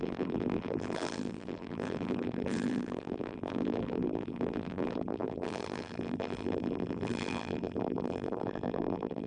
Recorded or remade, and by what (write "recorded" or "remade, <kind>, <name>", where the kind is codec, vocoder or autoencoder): remade, vocoder, BigVGAN v2